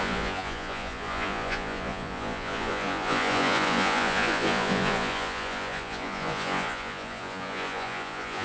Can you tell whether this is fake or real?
fake